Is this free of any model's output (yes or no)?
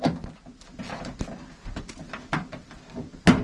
yes